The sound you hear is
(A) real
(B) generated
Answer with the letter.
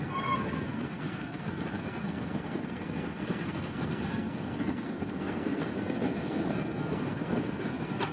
B